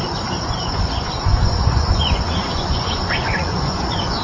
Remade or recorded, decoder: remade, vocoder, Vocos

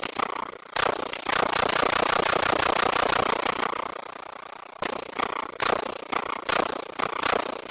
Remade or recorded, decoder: recorded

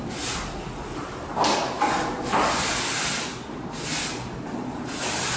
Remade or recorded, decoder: recorded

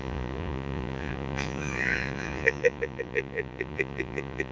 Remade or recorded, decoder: remade, vocoder, Vocos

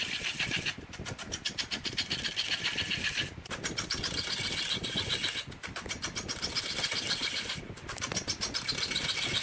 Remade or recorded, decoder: recorded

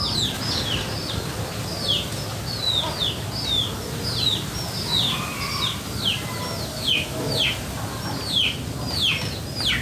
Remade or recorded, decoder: recorded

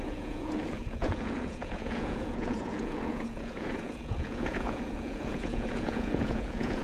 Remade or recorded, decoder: remade, vocoder, Vocos